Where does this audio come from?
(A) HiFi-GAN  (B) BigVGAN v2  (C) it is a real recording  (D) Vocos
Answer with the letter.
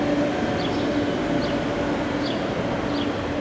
C